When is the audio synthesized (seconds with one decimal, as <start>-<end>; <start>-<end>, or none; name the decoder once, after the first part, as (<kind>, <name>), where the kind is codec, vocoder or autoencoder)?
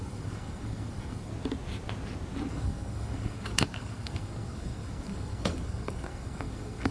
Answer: 0.0-1.3 (codec, SNAC); 2.5-6.9